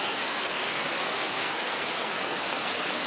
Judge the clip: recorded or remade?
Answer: remade